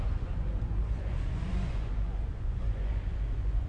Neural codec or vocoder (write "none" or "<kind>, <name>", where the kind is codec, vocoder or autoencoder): vocoder, Vocos